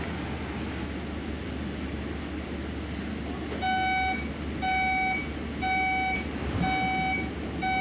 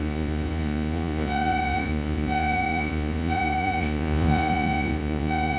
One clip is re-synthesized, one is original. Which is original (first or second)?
first